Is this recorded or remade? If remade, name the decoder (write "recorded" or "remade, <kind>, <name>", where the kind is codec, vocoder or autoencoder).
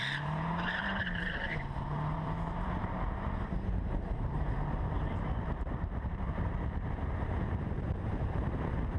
remade, vocoder, BigVGAN v2